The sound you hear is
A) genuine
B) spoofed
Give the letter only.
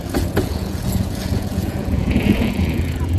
B